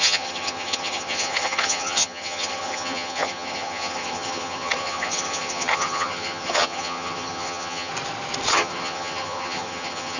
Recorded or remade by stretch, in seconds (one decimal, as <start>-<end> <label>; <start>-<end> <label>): 0.0-7.9 remade; 7.9-8.5 recorded; 8.5-10.2 remade